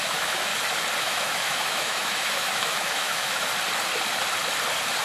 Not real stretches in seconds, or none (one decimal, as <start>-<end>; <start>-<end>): 0.0-0.5; 1.0-3.5